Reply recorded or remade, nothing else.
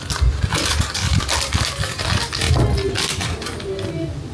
recorded